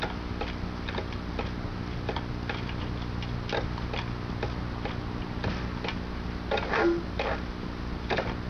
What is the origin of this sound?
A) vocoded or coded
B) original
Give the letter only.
B